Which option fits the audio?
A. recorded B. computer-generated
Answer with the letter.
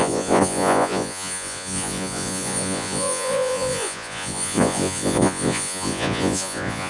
B